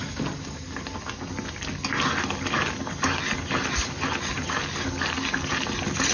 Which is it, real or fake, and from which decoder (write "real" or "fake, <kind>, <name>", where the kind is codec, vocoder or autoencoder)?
real